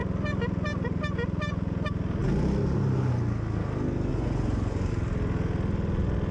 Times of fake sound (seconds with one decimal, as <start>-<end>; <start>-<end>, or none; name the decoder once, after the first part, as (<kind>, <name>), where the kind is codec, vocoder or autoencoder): 4.1-4.9 (vocoder, Vocos)